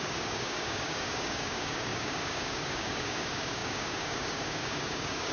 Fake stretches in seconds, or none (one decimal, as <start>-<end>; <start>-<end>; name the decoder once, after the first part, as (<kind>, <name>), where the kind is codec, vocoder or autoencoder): 0.0-5.3 (codec, DAC)